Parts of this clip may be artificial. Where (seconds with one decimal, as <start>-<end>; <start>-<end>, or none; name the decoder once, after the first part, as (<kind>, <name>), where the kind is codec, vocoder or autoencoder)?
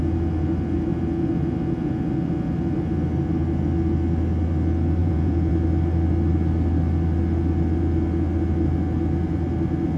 5.0-5.5 (vocoder, Vocos)